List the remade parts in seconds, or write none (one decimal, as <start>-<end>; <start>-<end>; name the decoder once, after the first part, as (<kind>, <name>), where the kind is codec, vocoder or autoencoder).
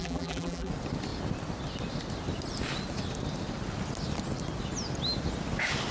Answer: 0.0-0.7 (vocoder, BigVGAN v2)